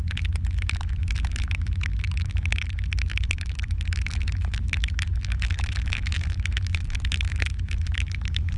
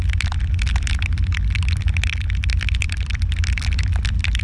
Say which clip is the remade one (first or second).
first